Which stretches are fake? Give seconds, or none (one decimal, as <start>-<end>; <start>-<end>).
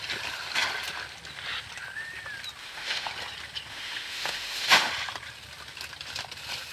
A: 2.6-3.1; 3.7-4.9